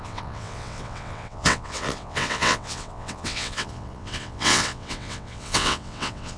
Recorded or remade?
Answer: remade